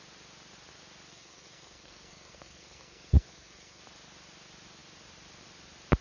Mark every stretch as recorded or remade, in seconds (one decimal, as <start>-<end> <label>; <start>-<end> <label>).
0.0-1.1 recorded; 1.1-3.8 remade; 3.8-6.0 recorded